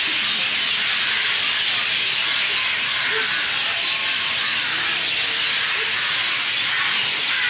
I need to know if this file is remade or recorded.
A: recorded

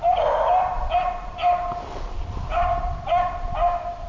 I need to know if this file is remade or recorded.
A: recorded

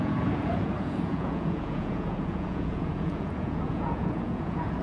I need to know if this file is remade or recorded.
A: remade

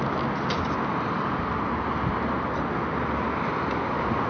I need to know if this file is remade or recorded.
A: recorded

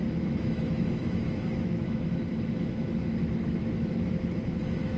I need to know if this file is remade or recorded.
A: remade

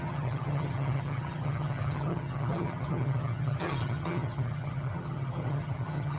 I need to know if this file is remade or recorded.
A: remade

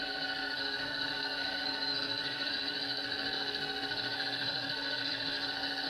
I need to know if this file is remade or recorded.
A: remade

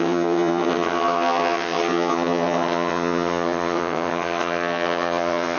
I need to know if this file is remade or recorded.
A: remade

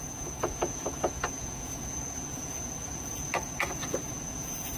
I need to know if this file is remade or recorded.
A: remade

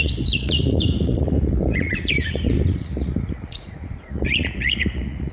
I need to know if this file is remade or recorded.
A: remade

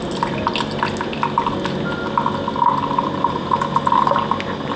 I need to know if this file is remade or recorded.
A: recorded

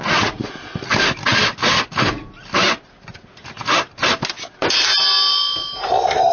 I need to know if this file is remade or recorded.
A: recorded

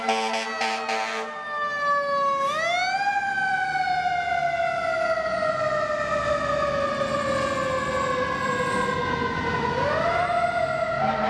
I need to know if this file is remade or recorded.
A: recorded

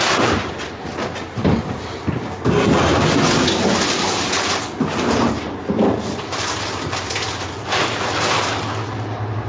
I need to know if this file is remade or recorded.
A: recorded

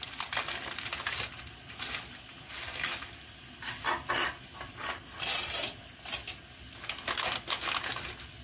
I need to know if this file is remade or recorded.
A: recorded